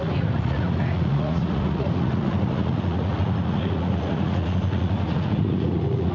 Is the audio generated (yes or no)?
yes